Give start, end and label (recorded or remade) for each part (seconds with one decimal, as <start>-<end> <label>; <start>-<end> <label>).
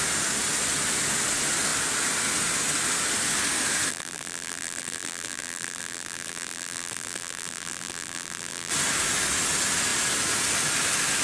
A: 0.0-3.9 recorded; 3.9-8.7 remade; 8.7-11.2 recorded